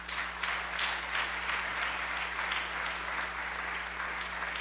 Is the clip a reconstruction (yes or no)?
no